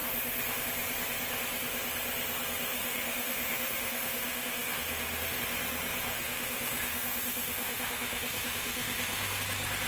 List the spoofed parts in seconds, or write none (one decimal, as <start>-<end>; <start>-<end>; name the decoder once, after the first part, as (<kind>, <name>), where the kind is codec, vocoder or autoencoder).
2.7-5.4 (autoencoder, DAC-VAE); 6.1-9.4